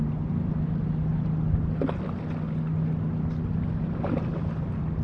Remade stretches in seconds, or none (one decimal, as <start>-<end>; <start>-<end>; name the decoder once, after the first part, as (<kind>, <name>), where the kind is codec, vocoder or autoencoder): none